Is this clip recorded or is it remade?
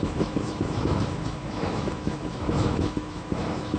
remade